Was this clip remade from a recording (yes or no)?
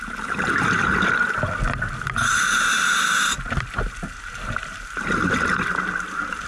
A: no